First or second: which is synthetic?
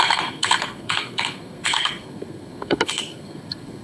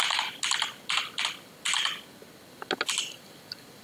first